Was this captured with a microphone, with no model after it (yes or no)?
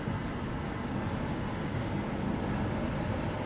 yes